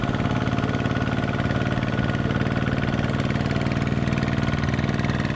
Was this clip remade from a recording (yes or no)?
no